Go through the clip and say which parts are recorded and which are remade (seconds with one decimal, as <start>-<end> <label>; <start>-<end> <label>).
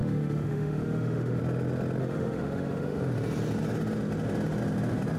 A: 0.0-1.4 remade; 1.4-2.0 recorded; 2.0-3.0 remade; 3.0-5.2 recorded